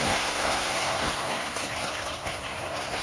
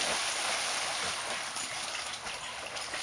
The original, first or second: second